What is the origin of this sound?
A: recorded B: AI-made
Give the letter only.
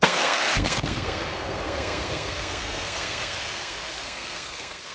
B